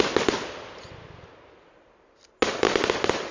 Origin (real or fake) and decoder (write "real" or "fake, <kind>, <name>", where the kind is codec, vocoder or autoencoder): real